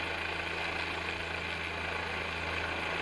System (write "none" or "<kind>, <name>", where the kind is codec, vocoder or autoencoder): none